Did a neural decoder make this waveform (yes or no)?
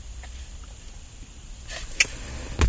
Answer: no